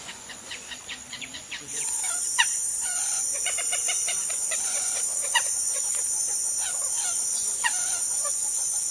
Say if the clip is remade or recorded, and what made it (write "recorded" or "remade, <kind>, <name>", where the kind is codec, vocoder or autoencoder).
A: remade, vocoder, Vocos